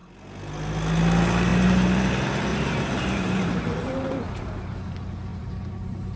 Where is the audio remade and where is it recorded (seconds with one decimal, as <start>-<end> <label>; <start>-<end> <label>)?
0.0-1.5 recorded; 1.5-2.1 remade; 2.1-2.5 recorded; 2.5-4.6 remade; 4.6-5.3 recorded; 5.3-6.2 remade